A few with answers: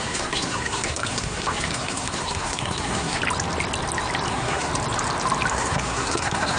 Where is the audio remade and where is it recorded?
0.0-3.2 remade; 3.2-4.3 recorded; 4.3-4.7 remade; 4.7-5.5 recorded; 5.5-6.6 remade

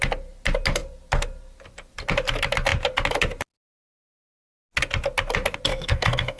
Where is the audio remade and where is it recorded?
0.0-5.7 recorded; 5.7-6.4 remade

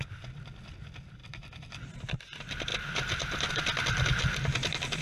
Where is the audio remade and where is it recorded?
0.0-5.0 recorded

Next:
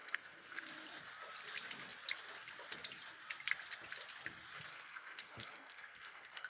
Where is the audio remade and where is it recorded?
0.0-0.6 remade; 0.6-4.7 recorded; 4.7-6.5 remade

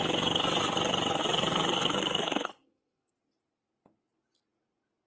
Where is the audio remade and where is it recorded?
0.0-1.2 recorded; 1.2-3.1 remade; 3.1-5.1 recorded

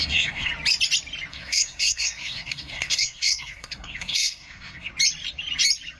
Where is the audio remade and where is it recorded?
0.0-0.5 remade; 0.5-1.3 recorded; 1.3-4.9 remade; 4.9-6.0 recorded

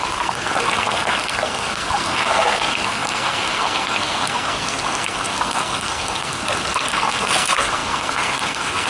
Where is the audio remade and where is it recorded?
0.0-8.9 remade

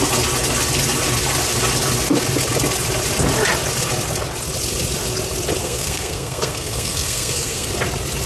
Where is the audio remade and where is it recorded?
0.0-5.6 recorded; 5.6-7.7 remade; 7.7-8.3 recorded